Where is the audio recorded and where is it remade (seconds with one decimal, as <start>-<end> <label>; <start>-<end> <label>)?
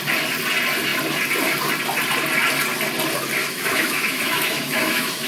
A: 0.0-3.4 recorded; 3.4-5.3 remade